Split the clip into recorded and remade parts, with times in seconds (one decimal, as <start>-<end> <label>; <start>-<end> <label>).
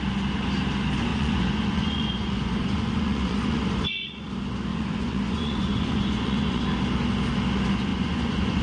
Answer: 0.0-1.1 recorded; 1.1-4.3 remade; 4.3-4.7 recorded; 4.7-6.6 remade; 6.6-7.9 recorded; 7.9-8.6 remade